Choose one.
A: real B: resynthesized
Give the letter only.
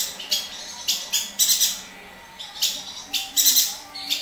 A